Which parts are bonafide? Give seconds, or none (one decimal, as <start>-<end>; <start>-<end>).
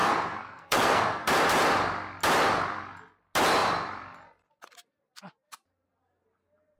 1.3-6.8